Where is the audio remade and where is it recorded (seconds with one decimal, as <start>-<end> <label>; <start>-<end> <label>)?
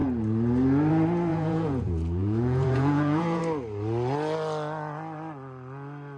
0.0-1.3 recorded; 1.3-3.4 remade; 3.4-6.2 recorded